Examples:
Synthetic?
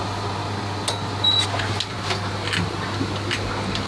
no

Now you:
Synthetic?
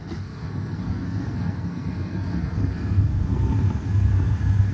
yes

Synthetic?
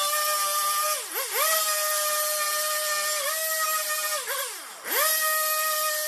no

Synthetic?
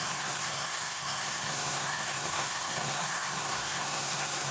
yes